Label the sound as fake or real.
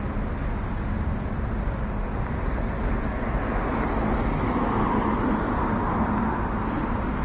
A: real